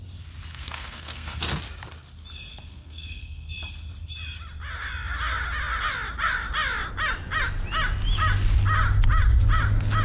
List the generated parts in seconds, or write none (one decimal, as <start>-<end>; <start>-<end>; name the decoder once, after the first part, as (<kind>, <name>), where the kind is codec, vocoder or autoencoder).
0.5-1.4 (codec, SNAC); 2.5-3.5